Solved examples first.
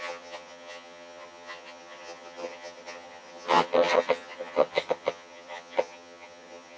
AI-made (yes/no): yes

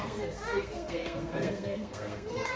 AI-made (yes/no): yes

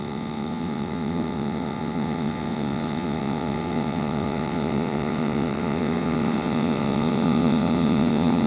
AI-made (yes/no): yes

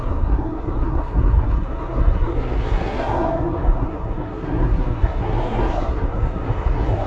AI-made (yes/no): yes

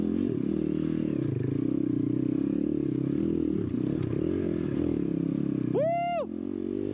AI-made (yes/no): no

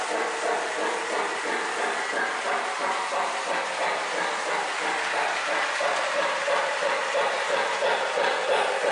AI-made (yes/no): no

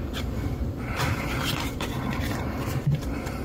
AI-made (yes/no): yes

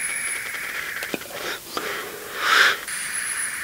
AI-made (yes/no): yes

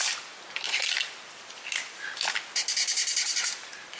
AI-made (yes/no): no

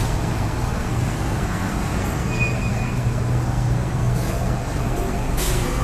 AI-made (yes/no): yes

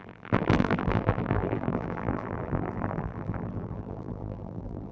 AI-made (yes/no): yes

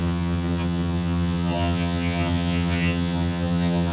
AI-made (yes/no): yes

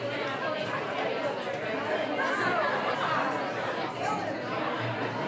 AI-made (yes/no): no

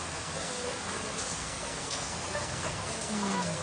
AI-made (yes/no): yes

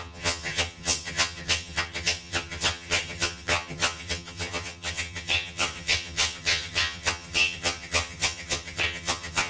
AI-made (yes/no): yes